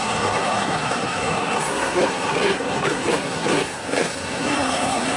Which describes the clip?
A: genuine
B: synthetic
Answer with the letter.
B